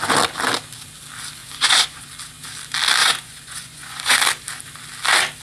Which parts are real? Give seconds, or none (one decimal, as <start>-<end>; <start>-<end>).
0.0-1.4; 2.1-3.0; 4.2-5.4